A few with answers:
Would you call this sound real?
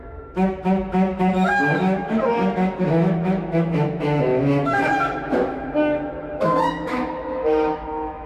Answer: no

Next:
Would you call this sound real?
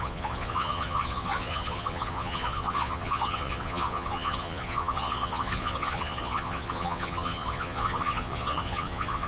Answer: no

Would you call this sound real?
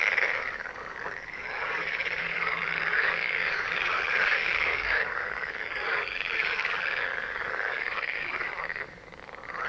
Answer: no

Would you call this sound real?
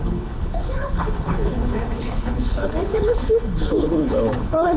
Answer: no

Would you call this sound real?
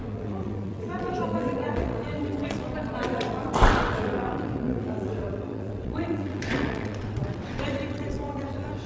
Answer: no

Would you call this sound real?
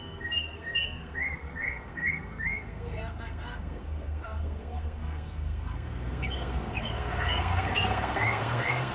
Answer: no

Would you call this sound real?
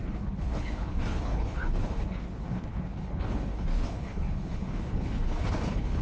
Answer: no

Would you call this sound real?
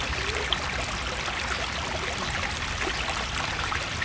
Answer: yes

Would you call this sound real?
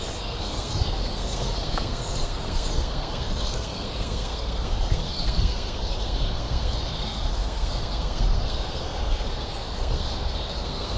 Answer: no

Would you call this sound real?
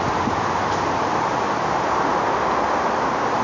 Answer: yes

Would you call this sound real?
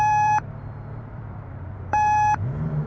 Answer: no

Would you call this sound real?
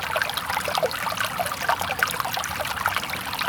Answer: yes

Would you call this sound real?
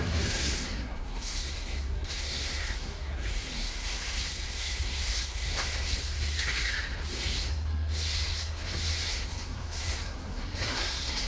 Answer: no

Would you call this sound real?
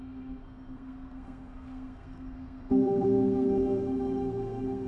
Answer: no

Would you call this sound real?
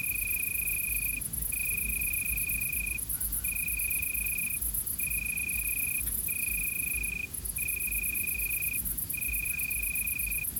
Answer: yes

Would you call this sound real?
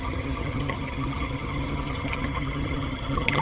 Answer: no